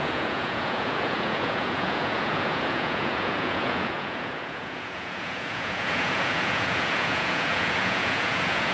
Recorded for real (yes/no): no